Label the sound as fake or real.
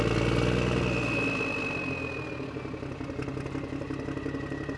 real